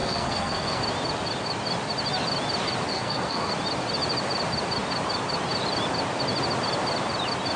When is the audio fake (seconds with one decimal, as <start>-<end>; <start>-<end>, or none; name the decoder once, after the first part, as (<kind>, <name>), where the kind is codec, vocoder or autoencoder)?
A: 0.0-0.8 (codec, SNAC); 2.9-3.5